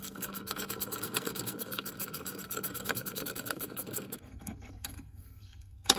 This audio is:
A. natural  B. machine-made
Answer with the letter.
B